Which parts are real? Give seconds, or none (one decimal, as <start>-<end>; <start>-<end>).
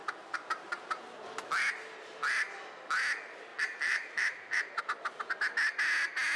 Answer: 1.0-3.5; 4.8-6.4